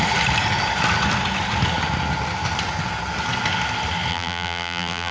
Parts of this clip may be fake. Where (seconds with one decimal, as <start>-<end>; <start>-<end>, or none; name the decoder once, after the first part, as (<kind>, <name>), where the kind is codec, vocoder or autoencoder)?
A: 4.1-5.1 (vocoder, BigVGAN v2)